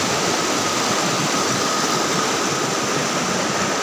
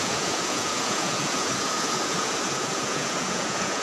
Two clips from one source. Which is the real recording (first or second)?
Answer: first